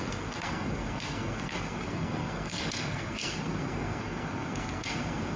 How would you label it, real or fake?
fake